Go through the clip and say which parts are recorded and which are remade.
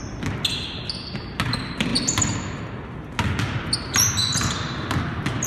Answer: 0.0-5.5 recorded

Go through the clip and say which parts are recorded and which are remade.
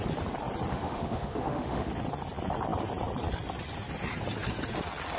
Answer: 0.0-0.7 recorded; 0.7-1.9 remade; 1.9-5.2 recorded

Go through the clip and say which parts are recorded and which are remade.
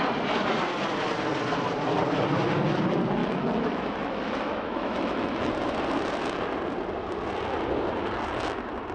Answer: 0.0-3.2 recorded; 3.2-5.5 remade; 5.5-8.9 recorded